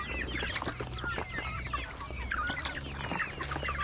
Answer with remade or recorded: recorded